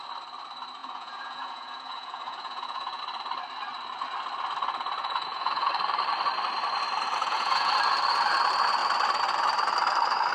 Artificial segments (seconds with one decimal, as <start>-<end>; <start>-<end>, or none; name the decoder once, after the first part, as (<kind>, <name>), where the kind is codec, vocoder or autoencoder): 0.8-3.0 (vocoder, Vocos); 5.0-5.7; 7.2-7.7